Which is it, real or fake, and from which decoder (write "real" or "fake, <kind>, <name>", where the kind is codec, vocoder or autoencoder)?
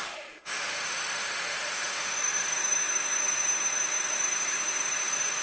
fake, autoencoder, DAC-VAE